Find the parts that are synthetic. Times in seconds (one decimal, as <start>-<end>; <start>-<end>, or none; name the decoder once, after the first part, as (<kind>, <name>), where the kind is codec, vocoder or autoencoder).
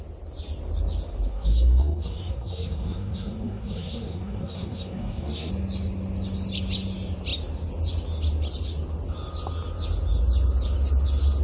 1.3-5.5 (codec, SNAC)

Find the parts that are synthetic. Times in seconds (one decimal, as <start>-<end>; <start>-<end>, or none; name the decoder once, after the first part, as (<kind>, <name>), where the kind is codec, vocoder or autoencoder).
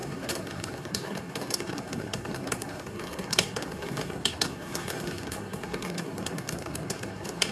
0.0-7.5 (codec, SNAC)